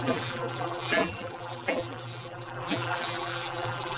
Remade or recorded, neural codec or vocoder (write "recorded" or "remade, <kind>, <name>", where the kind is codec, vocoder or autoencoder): remade, vocoder, BigVGAN v2